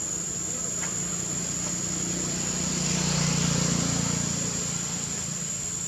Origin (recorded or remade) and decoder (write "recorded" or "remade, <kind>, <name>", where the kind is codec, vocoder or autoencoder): recorded